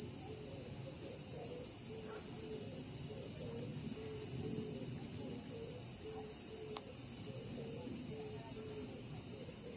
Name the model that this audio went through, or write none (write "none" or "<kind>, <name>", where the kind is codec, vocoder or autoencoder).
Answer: none